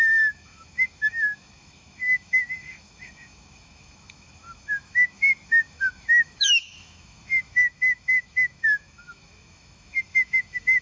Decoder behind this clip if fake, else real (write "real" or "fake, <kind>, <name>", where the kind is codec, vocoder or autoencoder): fake, autoencoder, DAC-VAE